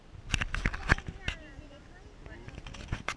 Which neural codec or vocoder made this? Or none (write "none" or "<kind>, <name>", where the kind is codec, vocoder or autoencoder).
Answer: none